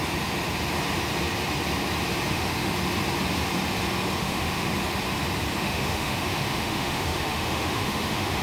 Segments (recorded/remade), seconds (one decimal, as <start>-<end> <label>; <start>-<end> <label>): 0.0-2.3 recorded; 2.3-2.7 remade; 2.7-4.2 recorded; 4.2-4.7 remade; 4.7-5.6 recorded; 5.6-8.4 remade